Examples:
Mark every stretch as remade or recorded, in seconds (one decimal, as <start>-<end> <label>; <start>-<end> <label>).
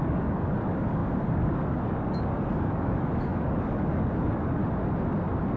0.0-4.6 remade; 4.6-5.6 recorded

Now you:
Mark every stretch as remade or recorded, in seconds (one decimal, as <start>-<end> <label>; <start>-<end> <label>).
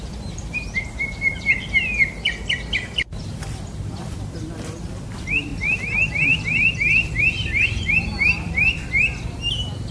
0.0-5.5 remade; 5.5-6.1 recorded; 6.1-9.9 remade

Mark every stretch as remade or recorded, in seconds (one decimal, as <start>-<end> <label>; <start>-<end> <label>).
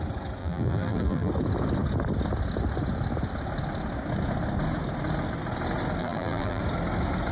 0.0-0.4 recorded; 0.4-1.3 remade; 1.3-6.0 recorded; 6.0-6.6 remade; 6.6-7.3 recorded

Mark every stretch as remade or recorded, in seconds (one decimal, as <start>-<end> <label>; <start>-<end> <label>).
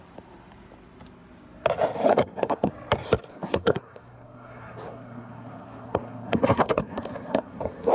0.0-2.1 recorded; 2.1-2.7 remade; 2.7-3.3 recorded; 3.3-7.9 remade